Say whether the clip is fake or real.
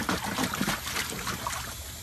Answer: real